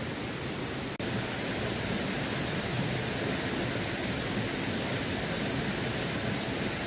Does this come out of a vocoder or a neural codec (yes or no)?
no